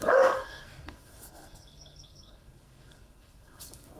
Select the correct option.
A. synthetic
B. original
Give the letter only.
A